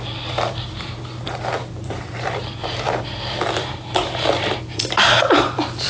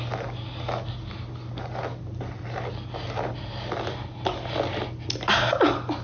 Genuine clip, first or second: second